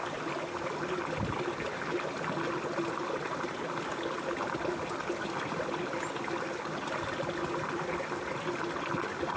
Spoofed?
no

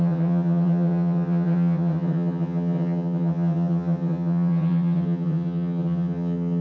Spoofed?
yes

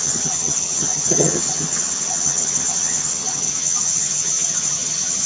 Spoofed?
yes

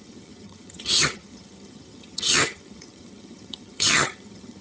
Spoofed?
yes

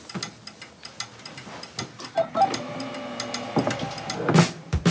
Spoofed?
no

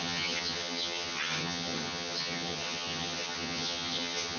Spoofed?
yes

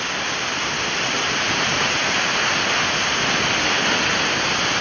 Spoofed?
no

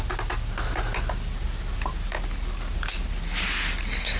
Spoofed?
no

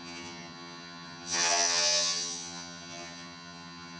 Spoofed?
yes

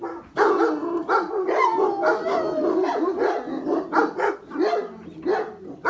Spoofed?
no